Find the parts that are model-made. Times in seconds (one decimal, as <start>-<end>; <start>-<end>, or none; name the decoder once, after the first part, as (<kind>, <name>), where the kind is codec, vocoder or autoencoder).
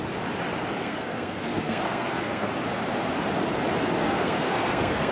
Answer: 0.8-2.5 (codec, SNAC); 4.0-5.1